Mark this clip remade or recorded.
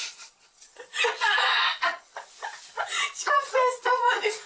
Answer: remade